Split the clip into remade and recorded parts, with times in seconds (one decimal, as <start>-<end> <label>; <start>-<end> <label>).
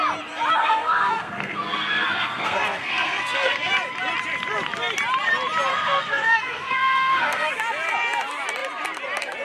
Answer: 0.0-0.6 recorded; 0.6-3.7 remade; 3.7-5.7 recorded; 5.7-7.5 remade; 7.5-9.4 recorded